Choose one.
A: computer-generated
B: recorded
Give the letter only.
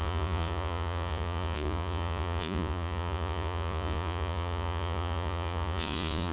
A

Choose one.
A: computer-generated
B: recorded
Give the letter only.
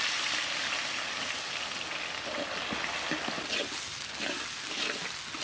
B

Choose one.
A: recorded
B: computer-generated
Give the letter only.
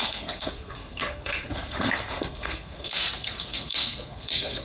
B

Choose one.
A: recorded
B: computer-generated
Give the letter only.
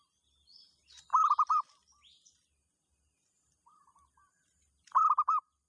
B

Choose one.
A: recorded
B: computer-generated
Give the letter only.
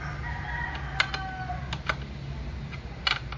A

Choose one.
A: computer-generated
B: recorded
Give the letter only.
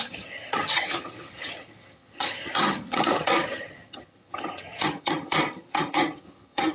A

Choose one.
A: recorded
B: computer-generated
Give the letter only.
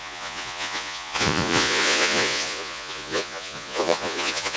B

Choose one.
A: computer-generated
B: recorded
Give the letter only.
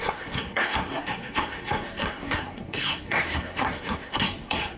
A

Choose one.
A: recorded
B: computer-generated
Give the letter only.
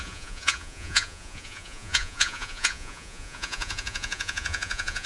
B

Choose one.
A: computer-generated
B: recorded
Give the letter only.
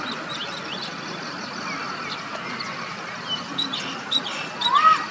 B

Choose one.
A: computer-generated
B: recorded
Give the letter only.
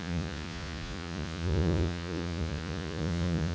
A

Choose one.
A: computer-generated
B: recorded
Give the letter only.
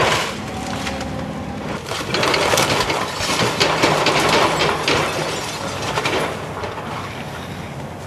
B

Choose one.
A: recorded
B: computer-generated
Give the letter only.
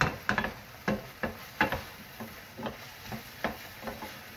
A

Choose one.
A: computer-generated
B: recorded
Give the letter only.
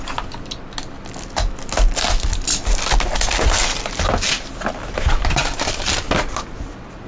B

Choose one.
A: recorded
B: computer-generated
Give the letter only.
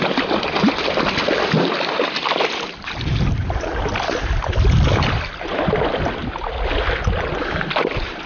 A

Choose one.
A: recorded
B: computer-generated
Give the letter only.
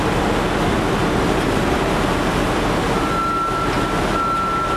A